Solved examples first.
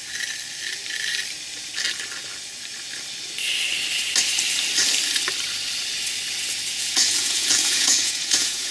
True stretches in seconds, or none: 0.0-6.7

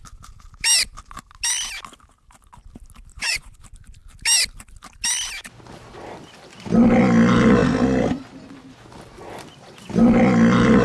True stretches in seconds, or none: 0.0-3.1; 3.6-10.8

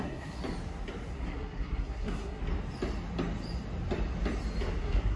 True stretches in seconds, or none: 0.4-1.1; 2.4-4.8

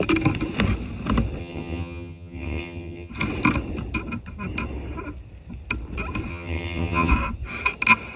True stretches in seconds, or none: 0.0-1.4; 3.1-6.3; 7.1-8.2